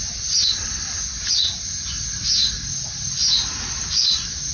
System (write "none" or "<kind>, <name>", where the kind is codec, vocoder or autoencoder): none